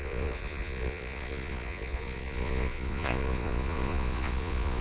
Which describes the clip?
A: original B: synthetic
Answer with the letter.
B